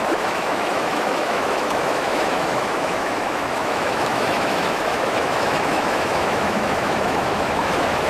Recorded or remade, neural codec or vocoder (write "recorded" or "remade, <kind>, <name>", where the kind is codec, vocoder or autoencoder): remade, autoencoder, DAC-VAE